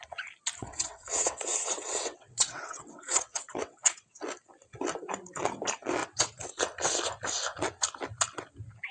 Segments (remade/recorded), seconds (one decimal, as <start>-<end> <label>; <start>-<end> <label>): 0.0-0.6 recorded; 0.6-4.2 remade; 4.2-6.0 recorded; 6.0-6.6 remade; 6.6-8.9 recorded